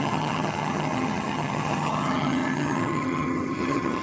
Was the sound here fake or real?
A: fake